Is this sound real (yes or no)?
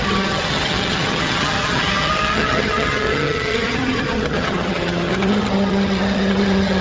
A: no